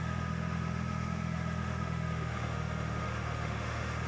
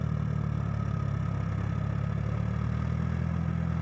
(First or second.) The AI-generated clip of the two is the first